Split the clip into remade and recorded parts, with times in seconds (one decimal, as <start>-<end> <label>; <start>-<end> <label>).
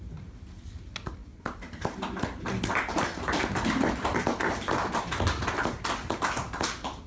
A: 0.0-7.1 recorded